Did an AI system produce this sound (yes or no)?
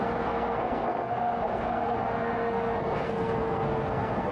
yes